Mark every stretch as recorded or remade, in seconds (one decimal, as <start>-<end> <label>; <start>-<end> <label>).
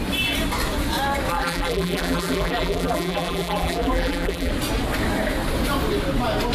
0.0-1.3 recorded; 1.3-4.5 remade; 4.5-6.5 recorded